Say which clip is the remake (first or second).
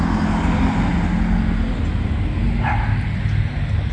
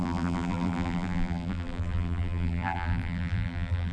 second